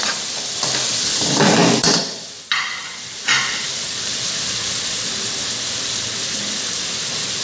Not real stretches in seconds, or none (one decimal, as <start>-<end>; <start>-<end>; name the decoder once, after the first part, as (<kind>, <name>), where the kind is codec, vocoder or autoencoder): none